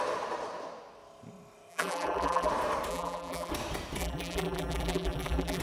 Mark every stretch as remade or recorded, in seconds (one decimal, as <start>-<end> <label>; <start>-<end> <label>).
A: 0.0-1.7 recorded; 1.7-2.5 remade; 2.5-2.9 recorded; 2.9-3.5 remade; 3.5-4.0 recorded; 4.0-5.6 remade